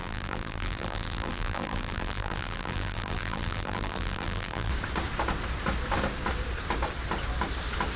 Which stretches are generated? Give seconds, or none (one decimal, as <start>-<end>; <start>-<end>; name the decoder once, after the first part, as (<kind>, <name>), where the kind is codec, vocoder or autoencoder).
0.0-4.7 (vocoder, BigVGAN v2)